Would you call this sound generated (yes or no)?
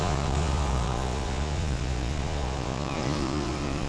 yes